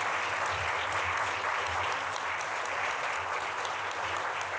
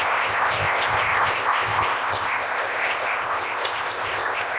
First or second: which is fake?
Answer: second